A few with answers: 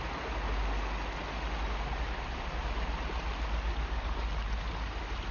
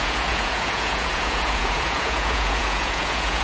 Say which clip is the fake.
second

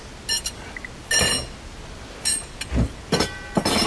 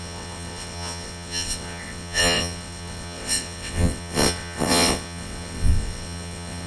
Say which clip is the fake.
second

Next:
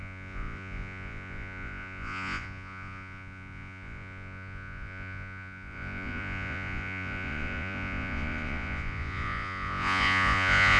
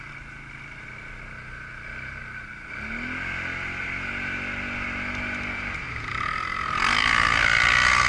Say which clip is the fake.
first